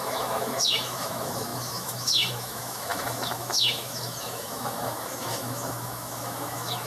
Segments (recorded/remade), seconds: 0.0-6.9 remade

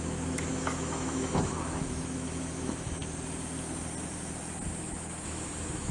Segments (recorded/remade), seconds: 0.0-3.0 remade; 3.0-4.8 recorded; 4.8-5.9 remade

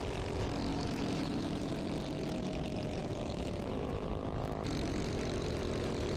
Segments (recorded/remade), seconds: 0.0-0.7 recorded; 0.7-1.7 remade; 1.7-3.0 recorded; 3.0-4.1 remade; 4.1-6.2 recorded

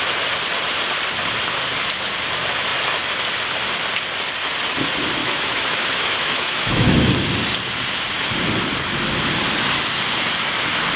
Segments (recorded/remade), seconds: 0.0-5.2 recorded; 5.2-7.1 remade; 7.1-11.0 recorded

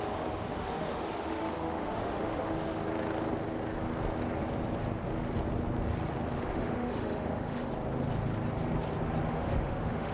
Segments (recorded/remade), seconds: 0.0-2.8 remade; 2.8-6.5 recorded; 6.5-7.7 remade; 7.7-9.3 recorded; 9.3-10.1 remade

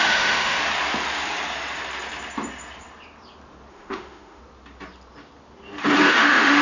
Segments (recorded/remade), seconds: 0.0-0.6 remade; 0.6-3.7 recorded; 3.7-4.4 remade; 4.4-6.1 recorded; 6.1-6.6 remade